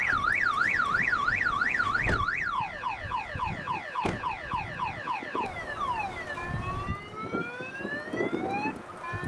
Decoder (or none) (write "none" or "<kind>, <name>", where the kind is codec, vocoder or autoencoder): none